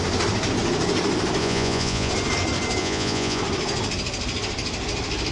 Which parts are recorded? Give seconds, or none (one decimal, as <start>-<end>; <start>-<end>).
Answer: 0.0-1.4; 2.1-2.8; 3.4-5.3